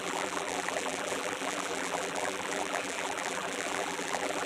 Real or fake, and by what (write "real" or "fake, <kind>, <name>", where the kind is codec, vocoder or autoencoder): fake, vocoder, BigVGAN v2